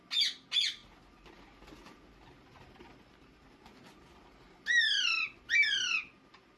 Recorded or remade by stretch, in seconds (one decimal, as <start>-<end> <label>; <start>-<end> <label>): 0.0-6.6 recorded